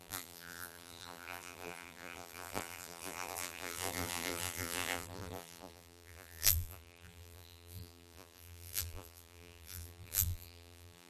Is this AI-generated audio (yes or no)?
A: yes